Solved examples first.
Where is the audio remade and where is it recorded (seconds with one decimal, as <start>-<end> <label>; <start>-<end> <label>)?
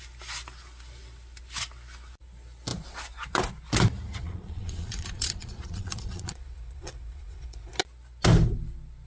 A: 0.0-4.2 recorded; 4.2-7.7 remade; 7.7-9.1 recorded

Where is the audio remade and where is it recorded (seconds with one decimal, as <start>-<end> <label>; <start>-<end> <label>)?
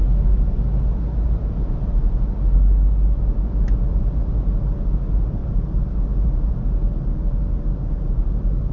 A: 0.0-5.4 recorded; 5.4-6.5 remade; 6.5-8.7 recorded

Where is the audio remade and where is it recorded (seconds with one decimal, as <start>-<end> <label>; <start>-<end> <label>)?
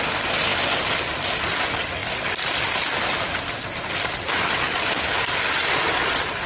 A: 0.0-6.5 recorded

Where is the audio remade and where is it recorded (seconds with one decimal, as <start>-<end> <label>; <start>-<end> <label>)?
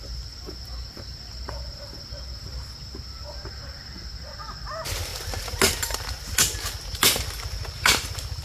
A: 0.0-8.4 recorded